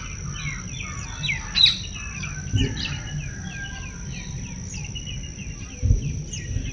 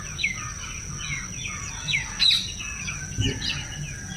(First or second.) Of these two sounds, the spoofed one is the second